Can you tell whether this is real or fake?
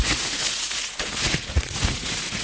fake